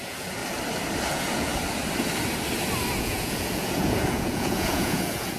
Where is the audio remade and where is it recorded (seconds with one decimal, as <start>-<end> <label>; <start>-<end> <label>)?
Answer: 0.0-0.4 remade; 0.4-1.1 recorded; 1.1-1.5 remade; 1.5-3.0 recorded; 3.0-5.4 remade